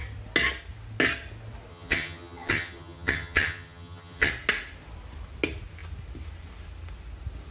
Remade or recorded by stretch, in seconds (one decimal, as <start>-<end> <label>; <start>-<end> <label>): 0.0-1.7 recorded; 1.7-4.3 remade; 4.3-7.5 recorded